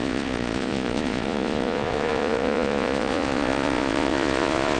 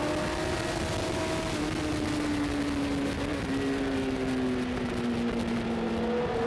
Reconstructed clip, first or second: first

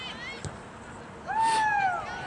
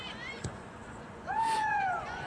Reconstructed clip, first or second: second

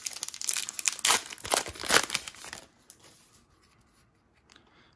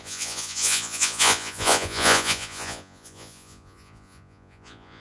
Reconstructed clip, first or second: second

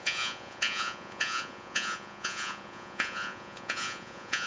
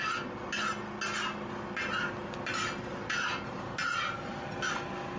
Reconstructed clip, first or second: first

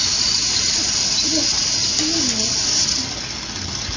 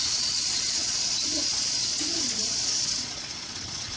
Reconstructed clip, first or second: second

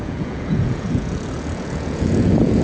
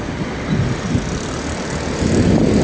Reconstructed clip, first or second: first